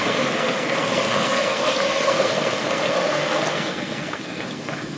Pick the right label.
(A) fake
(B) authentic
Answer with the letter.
A